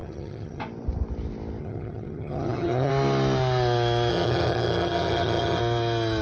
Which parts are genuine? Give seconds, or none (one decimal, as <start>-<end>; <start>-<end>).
0.6-1.6; 2.9-4.1; 5.6-6.2

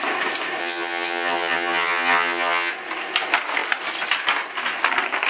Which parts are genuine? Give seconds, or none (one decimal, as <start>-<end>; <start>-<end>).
0.0-0.6; 2.7-5.3